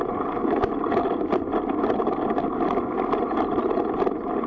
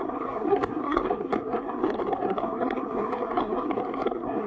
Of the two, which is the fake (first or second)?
second